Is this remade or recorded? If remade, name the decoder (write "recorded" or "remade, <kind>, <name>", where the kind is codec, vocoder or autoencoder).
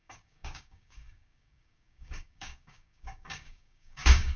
remade, codec, DAC